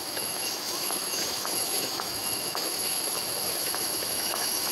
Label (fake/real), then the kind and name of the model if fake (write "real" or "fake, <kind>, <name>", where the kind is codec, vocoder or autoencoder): fake, autoencoder, DAC-VAE